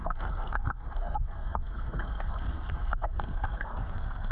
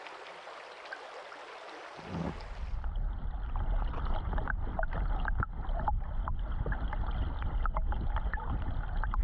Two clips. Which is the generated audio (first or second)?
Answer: first